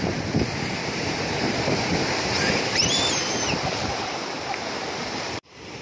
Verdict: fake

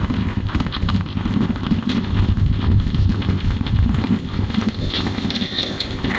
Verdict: fake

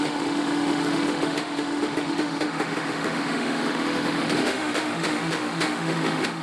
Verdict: fake